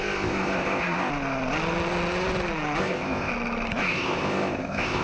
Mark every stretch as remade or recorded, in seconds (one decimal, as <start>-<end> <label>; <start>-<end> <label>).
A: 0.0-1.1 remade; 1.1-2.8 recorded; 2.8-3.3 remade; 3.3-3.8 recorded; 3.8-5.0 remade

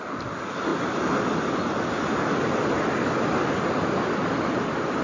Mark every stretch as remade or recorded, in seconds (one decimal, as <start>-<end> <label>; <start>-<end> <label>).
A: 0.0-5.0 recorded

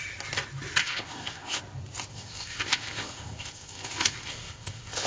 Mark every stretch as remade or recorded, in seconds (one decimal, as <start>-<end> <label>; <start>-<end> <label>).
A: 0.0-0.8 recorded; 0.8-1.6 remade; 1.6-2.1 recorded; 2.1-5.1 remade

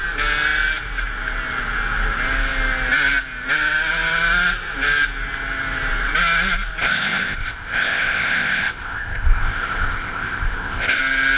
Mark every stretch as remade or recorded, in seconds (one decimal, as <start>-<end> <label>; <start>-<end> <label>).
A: 0.0-6.8 recorded; 6.8-11.0 remade; 11.0-11.4 recorded

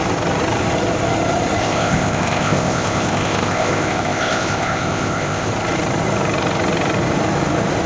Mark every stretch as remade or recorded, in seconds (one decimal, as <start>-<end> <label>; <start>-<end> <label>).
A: 0.0-1.6 recorded; 1.6-5.5 remade; 5.5-7.9 recorded

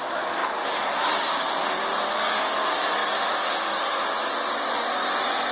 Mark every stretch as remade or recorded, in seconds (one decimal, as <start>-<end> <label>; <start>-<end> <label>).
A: 0.0-5.5 recorded

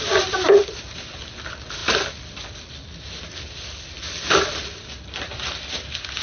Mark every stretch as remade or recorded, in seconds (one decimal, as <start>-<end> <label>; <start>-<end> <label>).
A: 0.0-6.2 recorded